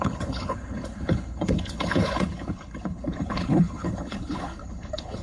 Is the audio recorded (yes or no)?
no